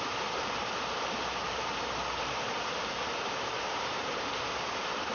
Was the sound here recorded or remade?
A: remade